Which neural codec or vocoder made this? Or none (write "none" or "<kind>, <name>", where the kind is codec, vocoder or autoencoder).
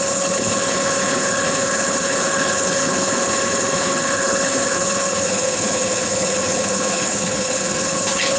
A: codec, HILCodec